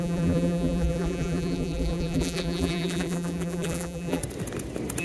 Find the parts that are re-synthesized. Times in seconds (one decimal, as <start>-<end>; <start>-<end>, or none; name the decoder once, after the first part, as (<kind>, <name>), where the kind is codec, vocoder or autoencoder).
0.0-4.2 (vocoder, BigVGAN v2)